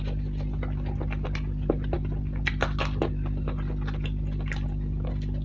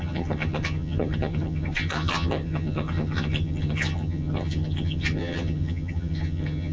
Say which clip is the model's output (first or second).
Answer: second